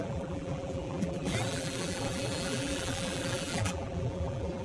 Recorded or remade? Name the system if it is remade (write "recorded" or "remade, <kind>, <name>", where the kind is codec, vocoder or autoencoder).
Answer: remade, vocoder, BigVGAN v2